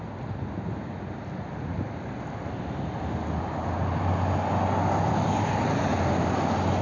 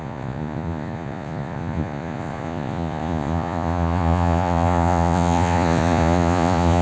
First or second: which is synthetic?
second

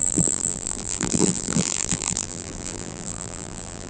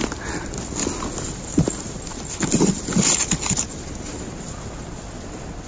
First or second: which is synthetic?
first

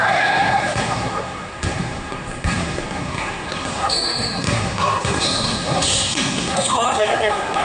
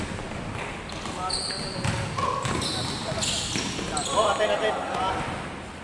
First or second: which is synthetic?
first